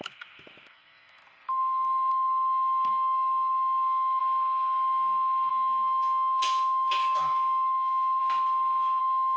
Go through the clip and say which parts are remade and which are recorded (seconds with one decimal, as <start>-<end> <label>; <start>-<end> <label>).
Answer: 0.0-1.2 remade; 1.2-2.1 recorded; 2.1-4.2 remade; 4.2-5.5 recorded; 5.5-8.2 remade; 8.2-9.0 recorded; 9.0-9.4 remade